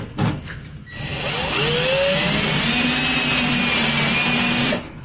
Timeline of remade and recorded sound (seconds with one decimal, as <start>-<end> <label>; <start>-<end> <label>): 0.0-5.0 recorded